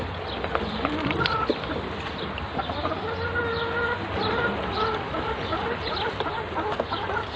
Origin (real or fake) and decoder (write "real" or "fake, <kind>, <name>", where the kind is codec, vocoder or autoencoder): real